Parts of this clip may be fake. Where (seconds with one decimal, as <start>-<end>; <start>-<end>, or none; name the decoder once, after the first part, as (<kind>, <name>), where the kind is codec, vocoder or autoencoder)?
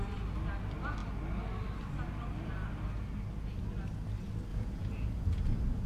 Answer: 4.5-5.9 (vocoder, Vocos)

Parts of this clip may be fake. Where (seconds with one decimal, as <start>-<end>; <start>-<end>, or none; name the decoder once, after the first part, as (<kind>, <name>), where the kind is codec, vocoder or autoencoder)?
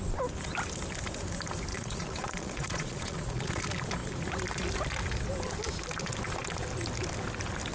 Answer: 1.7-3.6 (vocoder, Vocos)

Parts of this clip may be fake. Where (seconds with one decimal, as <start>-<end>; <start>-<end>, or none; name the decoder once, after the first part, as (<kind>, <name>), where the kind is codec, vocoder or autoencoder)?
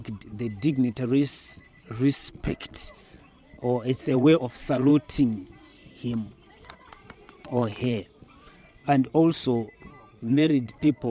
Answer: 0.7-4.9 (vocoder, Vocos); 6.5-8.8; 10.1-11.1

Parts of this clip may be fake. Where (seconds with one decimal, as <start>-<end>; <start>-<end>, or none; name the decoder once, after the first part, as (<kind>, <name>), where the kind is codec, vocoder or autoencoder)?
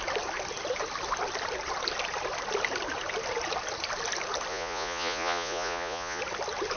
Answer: 4.5-6.2 (vocoder, Vocos)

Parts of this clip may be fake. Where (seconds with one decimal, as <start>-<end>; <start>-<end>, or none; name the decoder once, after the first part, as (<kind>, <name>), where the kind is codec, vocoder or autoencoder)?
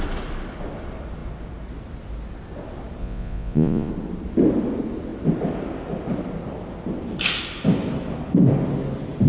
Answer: 3.0-3.9 (vocoder, Vocos)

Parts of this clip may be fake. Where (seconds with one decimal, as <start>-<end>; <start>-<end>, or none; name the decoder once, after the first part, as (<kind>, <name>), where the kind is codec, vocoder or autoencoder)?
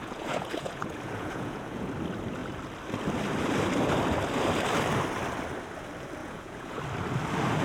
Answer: 0.0-1.9 (vocoder, Vocos); 6.2-6.8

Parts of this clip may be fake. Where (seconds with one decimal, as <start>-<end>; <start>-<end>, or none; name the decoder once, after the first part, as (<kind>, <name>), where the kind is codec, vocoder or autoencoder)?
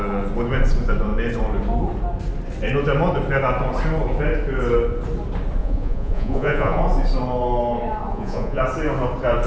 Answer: 5.6-6.8 (vocoder, Vocos); 8.1-8.6